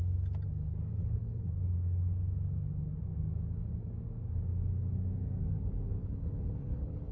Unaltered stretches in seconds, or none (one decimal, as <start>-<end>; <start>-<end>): 0.0-1.0; 1.5-6.0